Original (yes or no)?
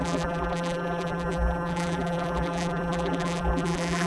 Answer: no